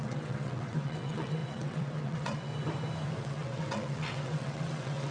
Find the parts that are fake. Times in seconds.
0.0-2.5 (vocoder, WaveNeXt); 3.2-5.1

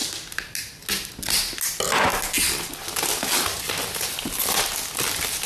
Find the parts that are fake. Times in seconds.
none

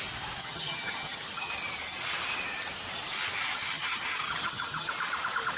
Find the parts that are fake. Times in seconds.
0.4-1.5 (vocoder, HiFi-GAN); 3.6-4.9

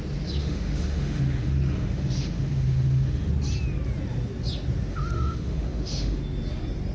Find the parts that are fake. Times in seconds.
0.4-3.3 (autoencoder, DAC-VAE); 4.9-6.2

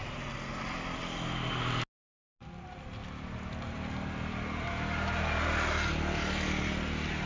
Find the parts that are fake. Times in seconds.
none

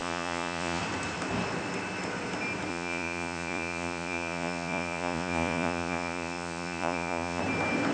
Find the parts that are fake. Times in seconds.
0.0-0.8 (vocoder, Vocos); 2.7-7.4

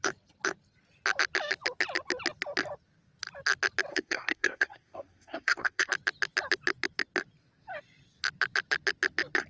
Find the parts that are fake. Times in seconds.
3.9-5.9 (codec, SNAC)